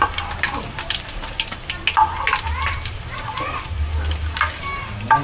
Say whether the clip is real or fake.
real